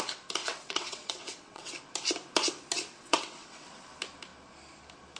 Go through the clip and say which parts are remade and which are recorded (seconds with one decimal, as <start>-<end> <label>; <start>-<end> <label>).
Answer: 0.0-0.4 recorded; 0.4-1.7 remade; 1.7-2.9 recorded; 2.9-3.7 remade; 3.7-5.2 recorded